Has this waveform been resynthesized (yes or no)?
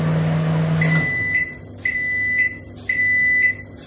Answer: no